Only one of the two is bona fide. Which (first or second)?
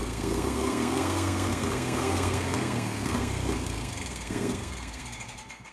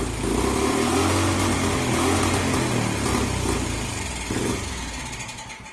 second